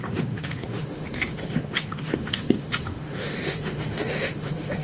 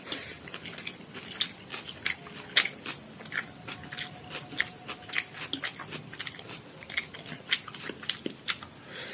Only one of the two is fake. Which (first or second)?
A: first